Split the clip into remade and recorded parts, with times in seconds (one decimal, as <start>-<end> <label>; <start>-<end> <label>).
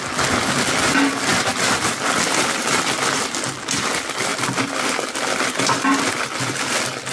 0.0-1.3 recorded; 1.3-3.9 remade; 3.9-4.3 recorded; 4.3-6.5 remade; 6.5-7.1 recorded